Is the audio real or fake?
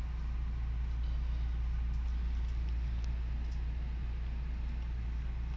real